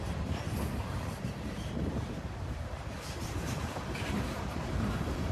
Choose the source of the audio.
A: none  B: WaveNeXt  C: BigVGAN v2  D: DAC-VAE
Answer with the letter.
C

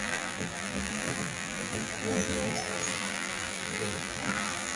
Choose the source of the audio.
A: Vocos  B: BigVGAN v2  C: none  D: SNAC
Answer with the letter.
B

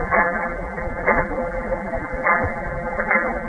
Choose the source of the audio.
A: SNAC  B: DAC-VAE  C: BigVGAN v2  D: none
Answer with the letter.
C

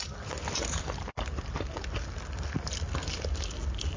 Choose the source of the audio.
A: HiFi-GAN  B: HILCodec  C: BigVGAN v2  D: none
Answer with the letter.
C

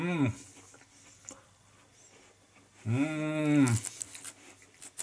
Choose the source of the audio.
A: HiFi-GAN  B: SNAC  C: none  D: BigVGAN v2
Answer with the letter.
C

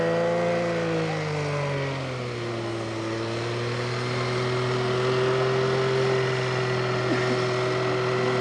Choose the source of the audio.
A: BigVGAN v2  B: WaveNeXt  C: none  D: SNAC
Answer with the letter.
C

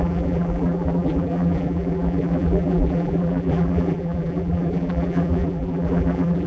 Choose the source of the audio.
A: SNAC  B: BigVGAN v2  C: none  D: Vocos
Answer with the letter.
B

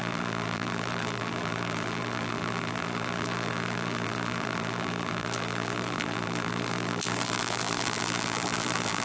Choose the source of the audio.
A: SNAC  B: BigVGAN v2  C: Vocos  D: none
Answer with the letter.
B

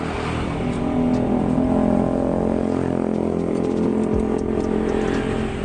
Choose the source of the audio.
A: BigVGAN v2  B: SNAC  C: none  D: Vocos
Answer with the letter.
C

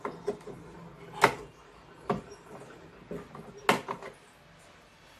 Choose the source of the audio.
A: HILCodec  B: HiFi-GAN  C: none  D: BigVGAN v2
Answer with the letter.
C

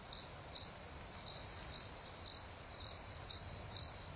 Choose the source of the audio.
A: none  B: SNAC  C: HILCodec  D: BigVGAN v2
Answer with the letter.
D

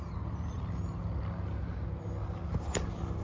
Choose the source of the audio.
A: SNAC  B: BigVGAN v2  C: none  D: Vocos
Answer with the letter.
C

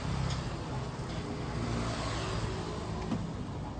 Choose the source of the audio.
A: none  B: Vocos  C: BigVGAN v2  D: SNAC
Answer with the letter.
A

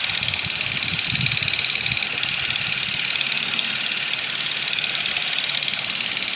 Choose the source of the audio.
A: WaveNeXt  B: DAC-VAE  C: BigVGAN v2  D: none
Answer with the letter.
D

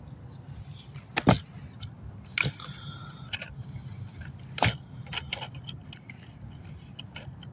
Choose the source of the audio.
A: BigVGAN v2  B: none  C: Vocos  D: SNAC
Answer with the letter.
B